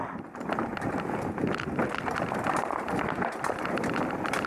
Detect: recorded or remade recorded